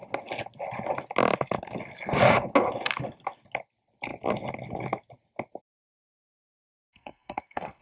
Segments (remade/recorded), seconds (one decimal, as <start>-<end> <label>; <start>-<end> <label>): 0.0-6.6 recorded; 6.6-7.8 remade